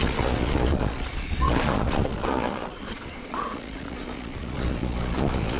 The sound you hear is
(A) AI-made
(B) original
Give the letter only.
A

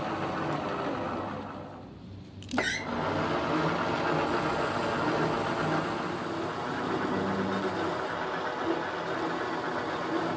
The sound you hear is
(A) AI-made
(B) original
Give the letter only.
B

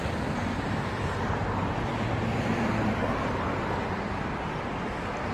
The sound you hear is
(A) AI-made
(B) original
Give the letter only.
B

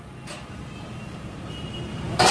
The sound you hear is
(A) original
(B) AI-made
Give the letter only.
A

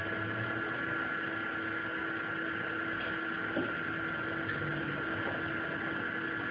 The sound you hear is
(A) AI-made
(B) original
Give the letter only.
B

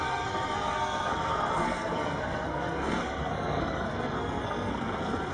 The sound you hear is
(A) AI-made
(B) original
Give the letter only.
A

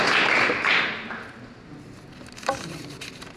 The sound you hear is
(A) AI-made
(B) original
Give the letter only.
B